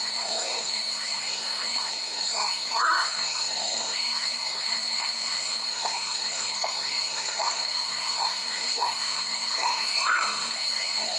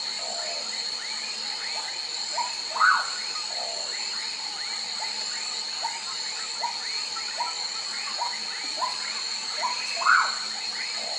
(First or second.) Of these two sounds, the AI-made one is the first